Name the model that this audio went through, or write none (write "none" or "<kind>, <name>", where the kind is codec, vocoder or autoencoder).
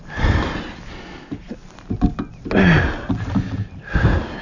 none